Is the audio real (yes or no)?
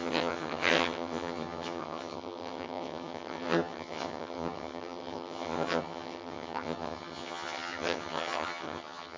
no